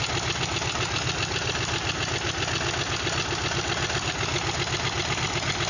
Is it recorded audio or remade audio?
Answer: recorded